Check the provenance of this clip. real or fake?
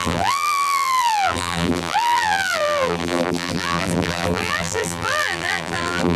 fake